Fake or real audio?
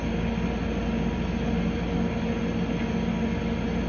real